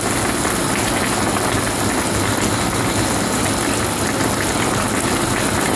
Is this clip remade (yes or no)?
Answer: no